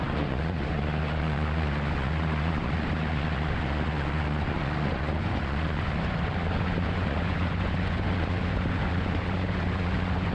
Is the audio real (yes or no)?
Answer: no